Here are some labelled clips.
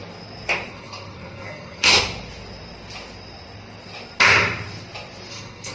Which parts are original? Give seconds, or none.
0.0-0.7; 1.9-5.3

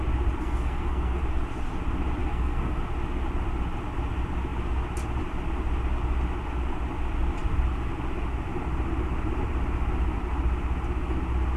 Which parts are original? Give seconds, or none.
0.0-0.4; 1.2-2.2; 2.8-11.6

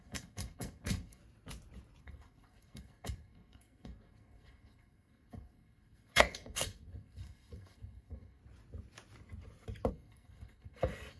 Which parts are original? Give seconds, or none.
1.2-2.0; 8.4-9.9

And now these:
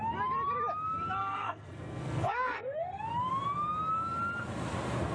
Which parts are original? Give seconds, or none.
0.0-1.2; 3.0-5.1

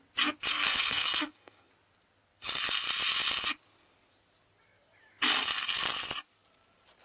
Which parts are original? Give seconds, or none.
0.0-0.5; 1.7-7.0

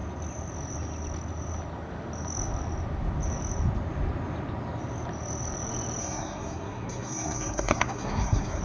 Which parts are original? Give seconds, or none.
0.0-6.0